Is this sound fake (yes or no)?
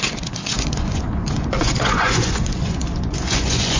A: yes